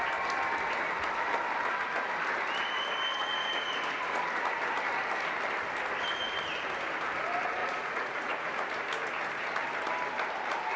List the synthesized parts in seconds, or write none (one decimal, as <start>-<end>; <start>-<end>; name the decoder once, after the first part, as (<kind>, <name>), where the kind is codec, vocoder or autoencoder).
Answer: 3.1-4.2 (vocoder, Vocos); 7.6-8.5